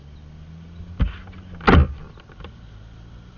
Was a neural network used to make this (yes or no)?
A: no